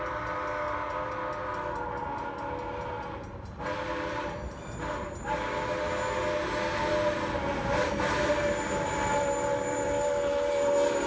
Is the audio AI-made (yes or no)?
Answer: no